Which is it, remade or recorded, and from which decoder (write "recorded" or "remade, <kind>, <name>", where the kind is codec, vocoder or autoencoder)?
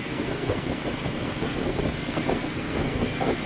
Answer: remade, codec, SNAC